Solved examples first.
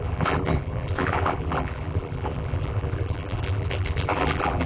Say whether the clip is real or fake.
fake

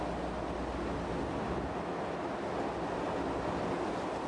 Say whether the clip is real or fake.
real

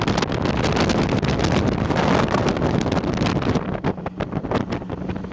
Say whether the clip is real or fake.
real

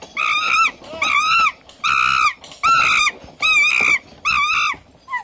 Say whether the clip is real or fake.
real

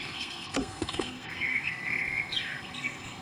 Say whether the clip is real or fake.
fake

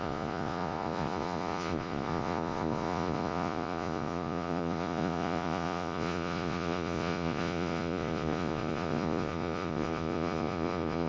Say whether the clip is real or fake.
fake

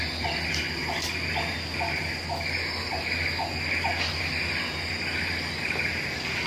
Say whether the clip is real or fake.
real